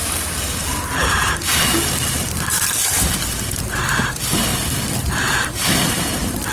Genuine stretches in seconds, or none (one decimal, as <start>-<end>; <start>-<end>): 0.0-1.0; 2.6-4.5